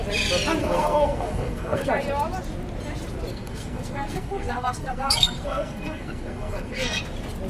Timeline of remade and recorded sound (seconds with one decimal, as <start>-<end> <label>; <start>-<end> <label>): 0.0-0.6 recorded; 0.6-1.9 remade; 1.9-3.3 recorded; 3.3-7.0 remade; 7.0-7.5 recorded